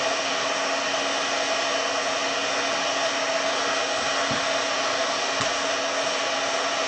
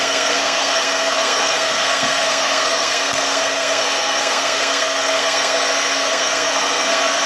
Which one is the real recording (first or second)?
first